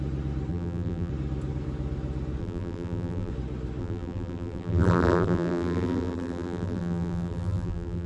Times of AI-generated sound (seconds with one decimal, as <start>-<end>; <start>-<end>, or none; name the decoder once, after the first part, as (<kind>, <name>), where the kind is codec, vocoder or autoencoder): 0.5-1.1 (vocoder, BigVGAN v2); 2.4-3.3; 3.8-8.1